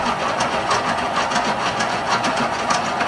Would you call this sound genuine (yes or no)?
no